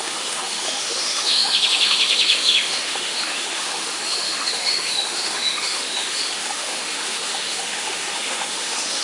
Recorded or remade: remade